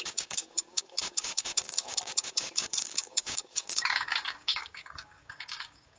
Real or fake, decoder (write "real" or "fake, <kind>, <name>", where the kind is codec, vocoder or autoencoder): fake, codec, DAC